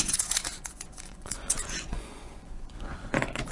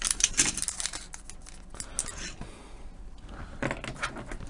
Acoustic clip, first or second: second